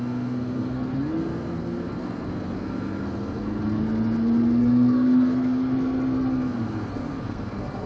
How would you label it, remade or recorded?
remade